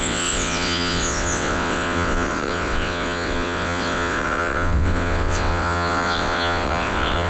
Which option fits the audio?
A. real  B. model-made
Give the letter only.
B